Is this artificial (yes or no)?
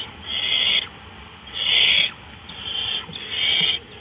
no